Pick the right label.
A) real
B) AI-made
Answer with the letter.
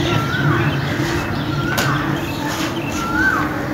A